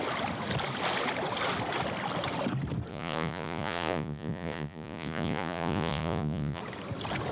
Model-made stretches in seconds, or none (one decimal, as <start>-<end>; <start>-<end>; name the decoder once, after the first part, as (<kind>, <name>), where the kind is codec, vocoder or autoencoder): 2.9-6.6 (vocoder, Vocos)